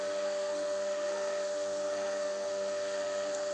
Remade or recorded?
remade